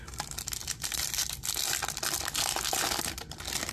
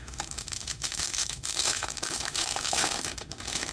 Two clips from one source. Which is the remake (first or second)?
second